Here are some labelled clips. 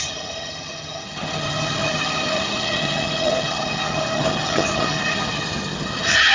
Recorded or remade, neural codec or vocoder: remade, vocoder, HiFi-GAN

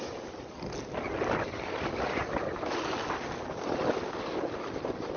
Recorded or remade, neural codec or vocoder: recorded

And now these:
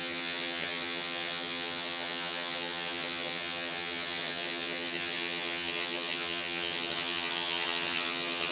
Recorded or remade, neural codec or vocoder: remade, vocoder, HiFi-GAN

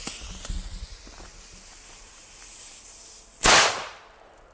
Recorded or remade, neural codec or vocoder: recorded